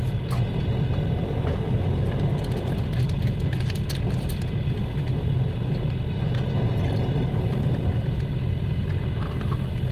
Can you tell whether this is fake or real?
real